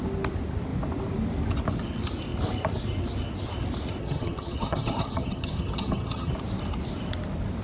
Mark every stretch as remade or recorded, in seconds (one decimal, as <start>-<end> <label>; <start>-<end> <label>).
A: 0.0-4.0 recorded; 4.0-6.3 remade; 6.3-7.6 recorded